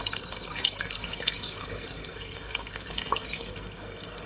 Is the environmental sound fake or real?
fake